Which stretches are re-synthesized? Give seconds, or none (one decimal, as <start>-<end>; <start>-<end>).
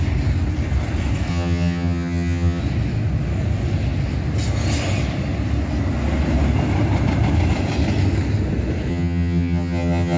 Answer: 1.3-2.6; 8.9-10.2